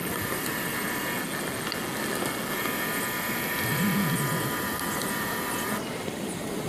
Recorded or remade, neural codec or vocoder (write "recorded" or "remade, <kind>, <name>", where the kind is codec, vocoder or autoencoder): recorded